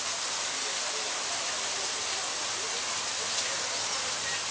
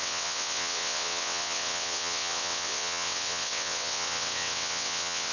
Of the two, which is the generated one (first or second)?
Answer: second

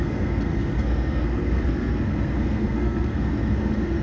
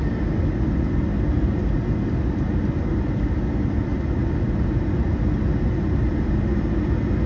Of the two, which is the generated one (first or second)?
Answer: first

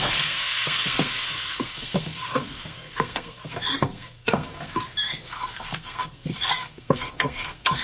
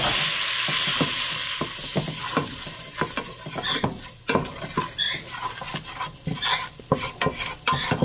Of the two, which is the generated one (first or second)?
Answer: first